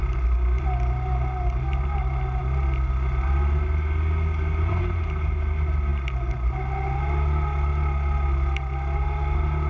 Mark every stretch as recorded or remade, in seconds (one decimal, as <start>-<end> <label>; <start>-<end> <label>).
0.0-9.7 recorded